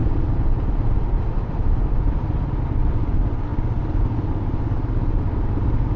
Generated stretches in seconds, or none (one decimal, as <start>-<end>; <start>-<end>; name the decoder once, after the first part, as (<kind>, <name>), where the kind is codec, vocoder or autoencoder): none